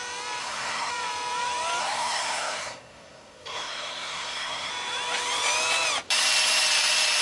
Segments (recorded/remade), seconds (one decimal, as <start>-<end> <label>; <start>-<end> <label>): 0.0-0.4 recorded; 0.4-0.9 remade; 0.9-1.8 recorded; 1.8-4.7 remade; 4.7-7.2 recorded